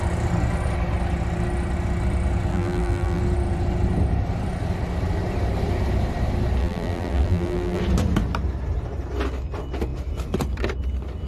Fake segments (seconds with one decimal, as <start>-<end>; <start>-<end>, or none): 2.5-3.2; 6.6-7.8